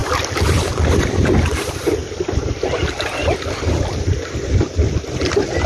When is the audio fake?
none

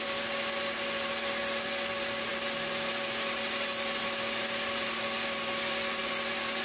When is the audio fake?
none

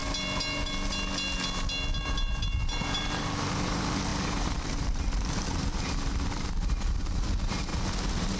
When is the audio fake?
2.0-7.7